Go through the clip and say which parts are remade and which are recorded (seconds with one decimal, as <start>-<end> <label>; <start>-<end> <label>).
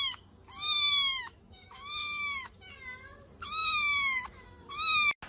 0.0-1.2 recorded; 1.2-1.9 remade; 1.9-5.3 recorded